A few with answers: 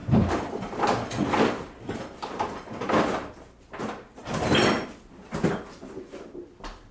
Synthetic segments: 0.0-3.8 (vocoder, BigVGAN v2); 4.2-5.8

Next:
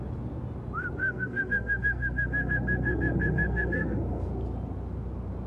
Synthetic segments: 1.0-4.3 (codec, SNAC)